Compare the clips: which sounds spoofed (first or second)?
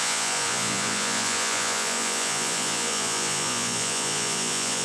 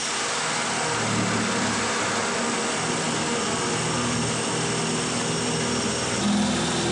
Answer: first